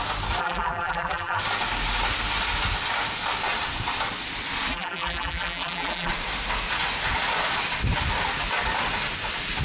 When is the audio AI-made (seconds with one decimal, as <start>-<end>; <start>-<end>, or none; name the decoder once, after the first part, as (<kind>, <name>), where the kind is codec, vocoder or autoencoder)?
0.4-1.4 (vocoder, BigVGAN v2); 4.7-6.1